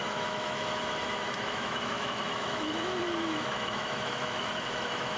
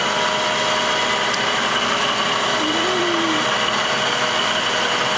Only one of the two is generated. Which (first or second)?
first